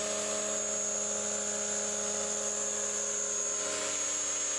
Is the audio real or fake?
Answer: real